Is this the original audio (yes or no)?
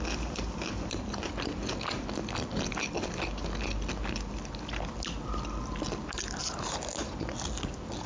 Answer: yes